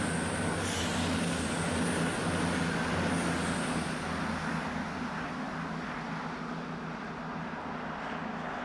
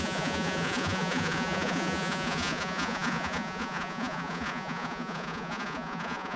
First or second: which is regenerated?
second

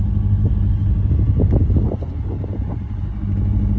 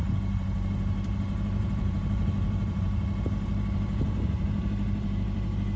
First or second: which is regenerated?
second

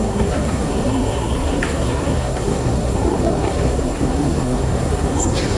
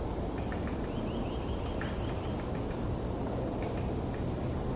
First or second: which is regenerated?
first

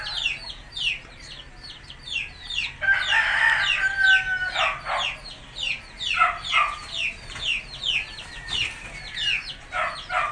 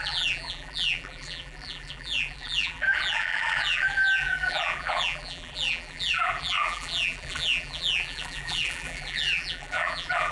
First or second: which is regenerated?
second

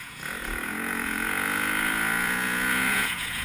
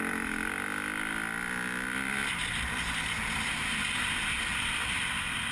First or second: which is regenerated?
first